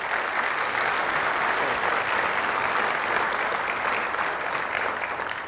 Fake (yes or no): no